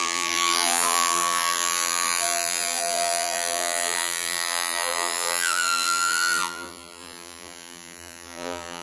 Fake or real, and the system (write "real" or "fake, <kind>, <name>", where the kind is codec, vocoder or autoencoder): fake, vocoder, BigVGAN v2